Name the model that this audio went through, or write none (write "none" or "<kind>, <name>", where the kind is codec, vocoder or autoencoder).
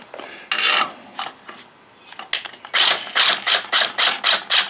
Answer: none